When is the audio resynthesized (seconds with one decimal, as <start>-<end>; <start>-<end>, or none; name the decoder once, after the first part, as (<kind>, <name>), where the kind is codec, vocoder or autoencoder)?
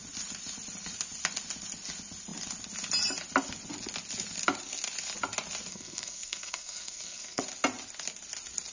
5.7-7.4 (codec, SNAC)